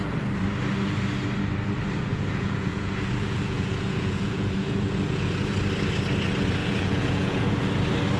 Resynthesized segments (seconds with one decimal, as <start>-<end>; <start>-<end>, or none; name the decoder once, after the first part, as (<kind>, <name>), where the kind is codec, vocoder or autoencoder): 2.1-5.3 (vocoder, Vocos); 6.6-7.7